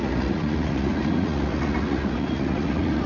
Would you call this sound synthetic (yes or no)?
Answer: yes